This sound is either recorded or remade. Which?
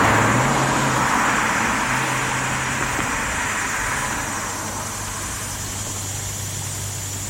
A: recorded